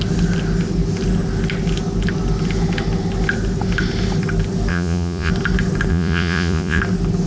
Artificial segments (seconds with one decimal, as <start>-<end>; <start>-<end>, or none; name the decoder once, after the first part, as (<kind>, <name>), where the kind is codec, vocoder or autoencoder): 4.7-5.3 (vocoder, Vocos); 5.9-6.8